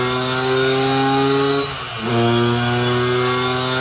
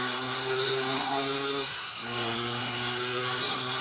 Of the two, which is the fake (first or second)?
second